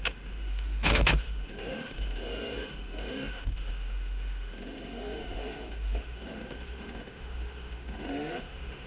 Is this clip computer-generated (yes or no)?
yes